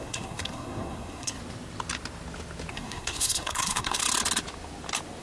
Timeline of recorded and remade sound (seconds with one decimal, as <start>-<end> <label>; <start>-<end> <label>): 0.0-1.4 remade; 1.4-2.7 recorded; 2.7-4.0 remade; 4.0-5.2 recorded